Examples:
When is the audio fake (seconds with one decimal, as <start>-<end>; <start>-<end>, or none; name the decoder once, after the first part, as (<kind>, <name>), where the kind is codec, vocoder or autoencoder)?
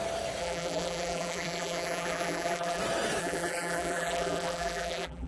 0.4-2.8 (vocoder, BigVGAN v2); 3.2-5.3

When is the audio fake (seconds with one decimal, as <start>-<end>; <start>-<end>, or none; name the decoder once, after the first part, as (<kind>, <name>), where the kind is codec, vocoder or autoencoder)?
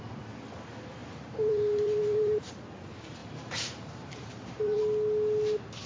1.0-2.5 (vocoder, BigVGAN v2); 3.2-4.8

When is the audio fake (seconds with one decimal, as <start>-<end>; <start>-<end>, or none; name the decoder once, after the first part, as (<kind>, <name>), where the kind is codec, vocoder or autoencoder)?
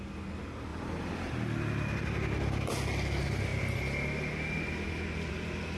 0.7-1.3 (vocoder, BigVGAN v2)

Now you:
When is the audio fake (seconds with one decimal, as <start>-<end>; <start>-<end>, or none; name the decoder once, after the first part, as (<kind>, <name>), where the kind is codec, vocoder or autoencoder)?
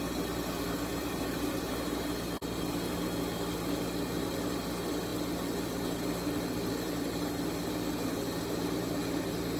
0.9-1.6 (vocoder, BigVGAN v2)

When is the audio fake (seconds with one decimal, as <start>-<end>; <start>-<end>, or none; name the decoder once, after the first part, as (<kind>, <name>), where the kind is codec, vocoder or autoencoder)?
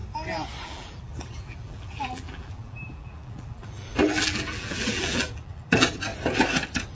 0.6-6.1 (vocoder, BigVGAN v2)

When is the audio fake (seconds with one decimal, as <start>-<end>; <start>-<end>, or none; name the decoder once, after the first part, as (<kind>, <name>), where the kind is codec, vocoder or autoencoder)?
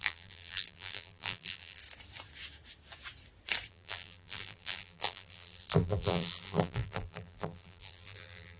0.0-1.8 (vocoder, BigVGAN v2); 3.7-8.6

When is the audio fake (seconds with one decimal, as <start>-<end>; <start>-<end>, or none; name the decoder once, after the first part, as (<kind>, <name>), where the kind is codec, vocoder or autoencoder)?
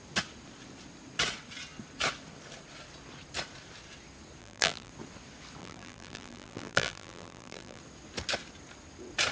4.4-4.9 (vocoder, BigVGAN v2); 5.6-7.8